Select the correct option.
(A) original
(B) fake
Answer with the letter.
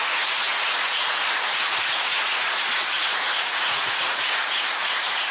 B